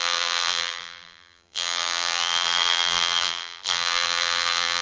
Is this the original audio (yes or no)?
no